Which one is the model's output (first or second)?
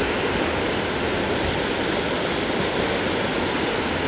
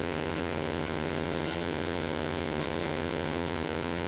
second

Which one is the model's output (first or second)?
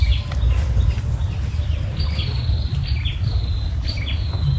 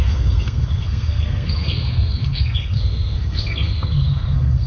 second